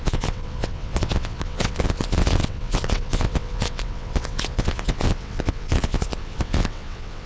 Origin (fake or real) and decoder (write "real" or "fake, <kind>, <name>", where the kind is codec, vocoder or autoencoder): fake, vocoder, WaveNeXt